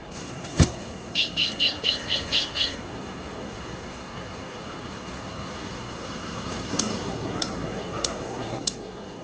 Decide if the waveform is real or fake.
fake